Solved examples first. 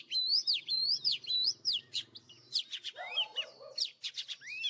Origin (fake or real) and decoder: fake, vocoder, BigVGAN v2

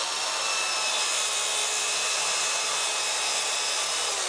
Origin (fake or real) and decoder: real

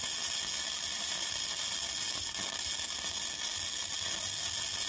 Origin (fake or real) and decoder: real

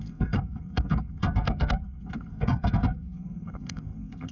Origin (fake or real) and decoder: fake, codec, SNAC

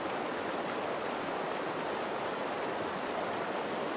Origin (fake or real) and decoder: real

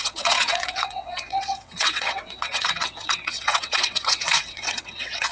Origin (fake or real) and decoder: fake, vocoder, WaveNeXt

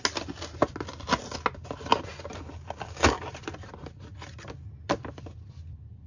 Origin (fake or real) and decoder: real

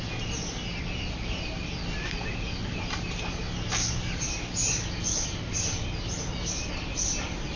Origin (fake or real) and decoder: real